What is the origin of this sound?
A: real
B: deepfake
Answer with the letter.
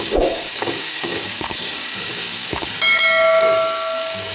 B